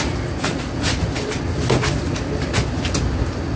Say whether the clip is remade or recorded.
recorded